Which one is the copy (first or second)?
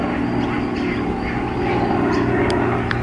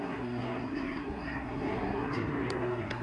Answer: second